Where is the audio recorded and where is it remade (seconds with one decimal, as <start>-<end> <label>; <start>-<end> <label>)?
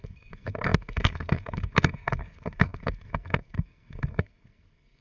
0.0-5.0 remade